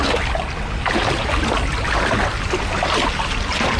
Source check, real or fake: real